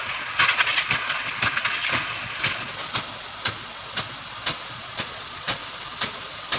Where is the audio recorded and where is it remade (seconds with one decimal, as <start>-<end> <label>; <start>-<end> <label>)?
0.0-0.7 remade; 0.7-4.7 recorded; 4.7-5.6 remade; 5.6-6.6 recorded